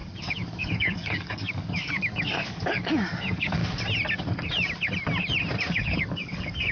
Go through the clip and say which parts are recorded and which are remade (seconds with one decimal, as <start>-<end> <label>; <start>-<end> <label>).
0.0-3.6 remade; 3.6-5.7 recorded; 5.7-6.7 remade